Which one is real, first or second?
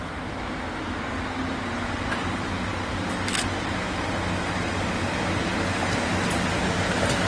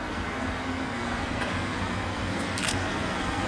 first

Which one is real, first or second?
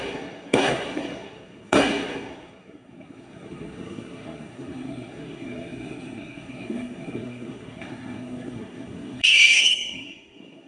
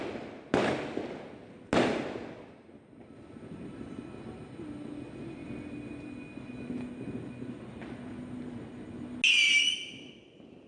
second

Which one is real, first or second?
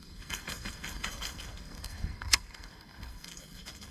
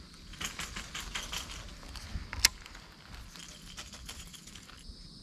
second